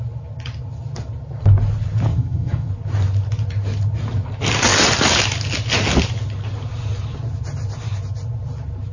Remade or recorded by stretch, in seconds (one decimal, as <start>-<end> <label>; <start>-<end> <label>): 0.0-2.1 recorded; 2.1-2.7 remade; 2.7-8.9 recorded